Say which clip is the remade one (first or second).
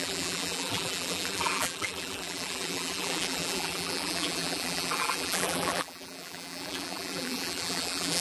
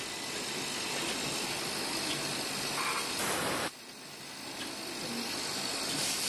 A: first